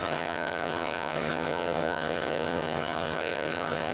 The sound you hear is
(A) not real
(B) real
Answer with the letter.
A